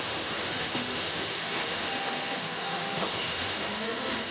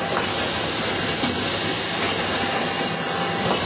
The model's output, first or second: first